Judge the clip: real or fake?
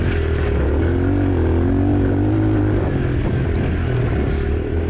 real